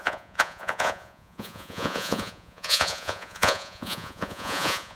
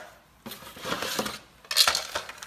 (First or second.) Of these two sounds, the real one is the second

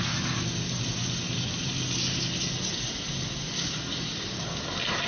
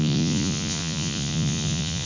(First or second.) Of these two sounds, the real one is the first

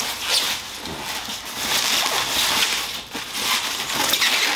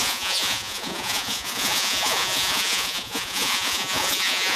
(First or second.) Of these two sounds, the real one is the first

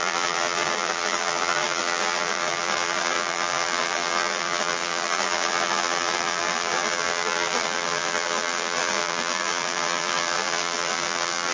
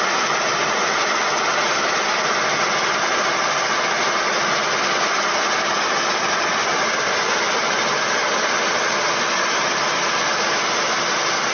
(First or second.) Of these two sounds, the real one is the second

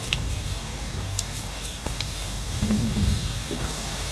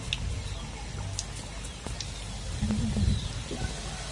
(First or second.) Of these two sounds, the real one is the second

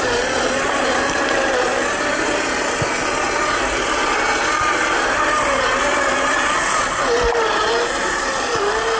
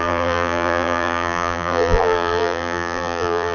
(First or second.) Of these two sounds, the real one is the first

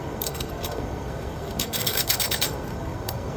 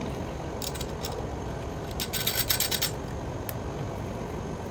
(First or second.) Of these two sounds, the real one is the second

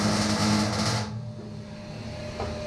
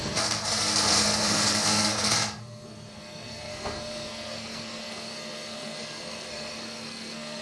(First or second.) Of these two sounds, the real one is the first